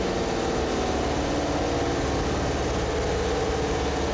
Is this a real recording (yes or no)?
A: yes